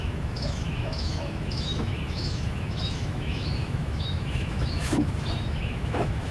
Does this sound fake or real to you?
fake